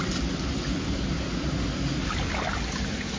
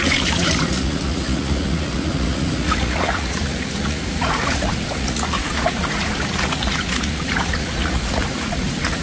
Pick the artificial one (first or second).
second